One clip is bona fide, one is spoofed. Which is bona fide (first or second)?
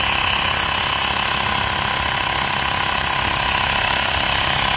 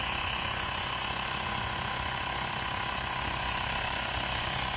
first